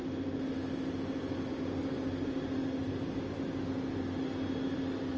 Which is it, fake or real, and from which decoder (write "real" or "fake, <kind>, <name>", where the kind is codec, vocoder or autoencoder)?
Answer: real